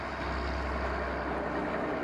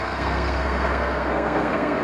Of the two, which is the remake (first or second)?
second